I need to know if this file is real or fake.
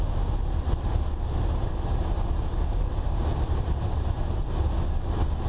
real